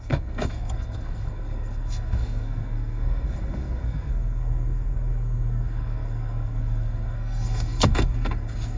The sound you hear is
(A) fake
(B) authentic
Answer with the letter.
A